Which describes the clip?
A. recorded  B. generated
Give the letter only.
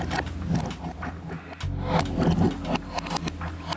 A